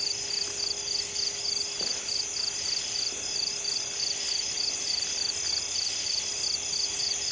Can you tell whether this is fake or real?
real